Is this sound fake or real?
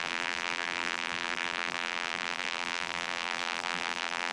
fake